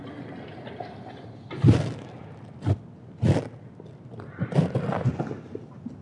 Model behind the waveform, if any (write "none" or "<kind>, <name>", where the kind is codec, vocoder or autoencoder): none